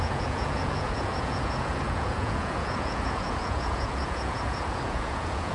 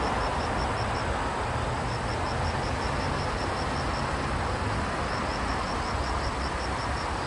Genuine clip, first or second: second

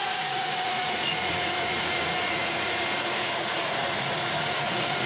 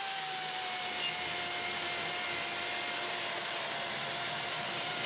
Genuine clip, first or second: second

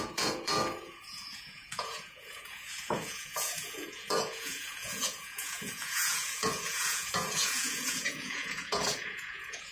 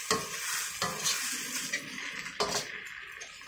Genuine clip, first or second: second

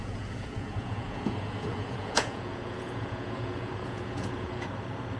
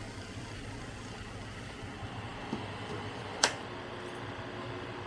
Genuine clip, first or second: second